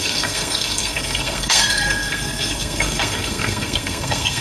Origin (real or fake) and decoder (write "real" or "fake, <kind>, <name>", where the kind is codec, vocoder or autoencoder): fake, codec, SNAC